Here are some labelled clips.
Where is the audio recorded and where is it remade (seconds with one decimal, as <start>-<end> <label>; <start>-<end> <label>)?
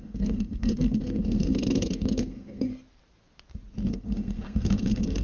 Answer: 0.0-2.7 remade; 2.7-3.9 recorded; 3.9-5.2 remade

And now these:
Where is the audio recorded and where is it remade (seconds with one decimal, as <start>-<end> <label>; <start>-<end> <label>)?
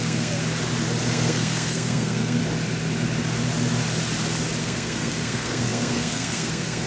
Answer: 0.0-0.4 remade; 0.4-1.1 recorded; 1.1-2.4 remade; 2.4-4.6 recorded; 4.6-6.9 remade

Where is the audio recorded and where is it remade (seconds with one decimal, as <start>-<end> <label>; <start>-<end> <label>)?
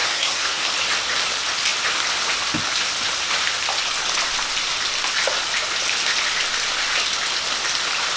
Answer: 0.0-0.7 remade; 0.7-8.2 recorded